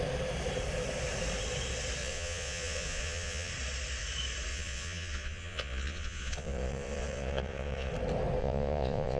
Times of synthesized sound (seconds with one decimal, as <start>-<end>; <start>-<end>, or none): 2.0-3.5; 4.5-7.9; 8.4-9.2